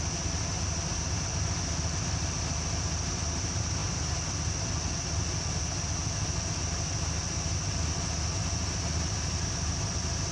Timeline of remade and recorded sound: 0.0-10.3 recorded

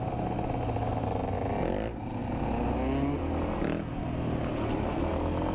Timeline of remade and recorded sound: 0.0-5.5 recorded

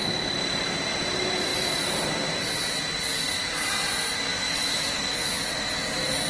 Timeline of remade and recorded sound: 0.0-4.3 recorded; 4.3-5.5 remade; 5.5-6.3 recorded

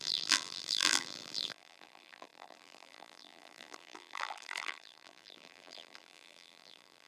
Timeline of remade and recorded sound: 0.0-7.1 remade

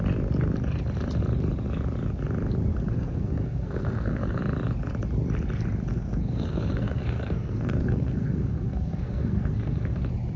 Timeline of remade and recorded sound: 0.0-2.7 recorded; 2.7-4.4 remade; 4.4-5.9 recorded; 5.9-10.0 remade; 10.0-10.4 recorded

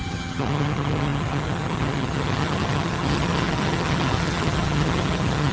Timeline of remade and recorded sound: 0.0-5.5 remade